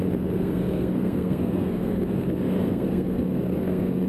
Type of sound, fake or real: fake